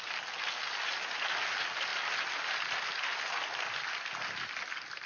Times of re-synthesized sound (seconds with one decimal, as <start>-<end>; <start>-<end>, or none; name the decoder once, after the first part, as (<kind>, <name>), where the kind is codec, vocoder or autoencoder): none